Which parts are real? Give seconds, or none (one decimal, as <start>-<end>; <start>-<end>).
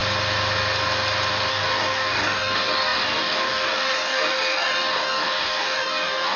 0.0-1.5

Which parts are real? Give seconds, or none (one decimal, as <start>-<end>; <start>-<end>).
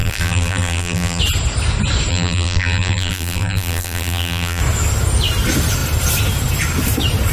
1.2-2.1; 4.6-7.3